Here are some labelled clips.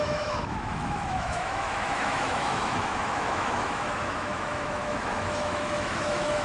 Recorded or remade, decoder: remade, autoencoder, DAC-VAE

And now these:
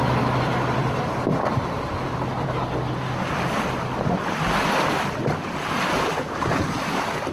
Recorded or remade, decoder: recorded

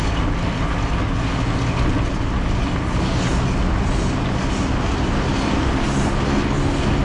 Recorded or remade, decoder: recorded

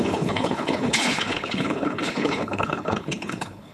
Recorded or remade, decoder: remade, codec, HILCodec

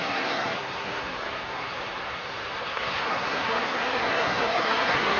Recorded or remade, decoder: remade, codec, SNAC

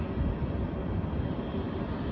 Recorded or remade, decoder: recorded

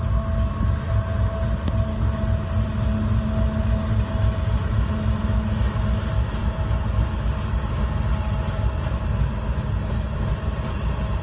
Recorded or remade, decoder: recorded